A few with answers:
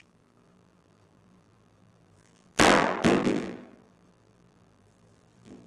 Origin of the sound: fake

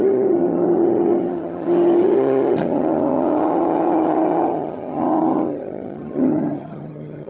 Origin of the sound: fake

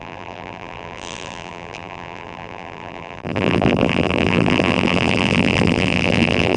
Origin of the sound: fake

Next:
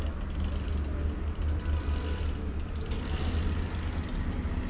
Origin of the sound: real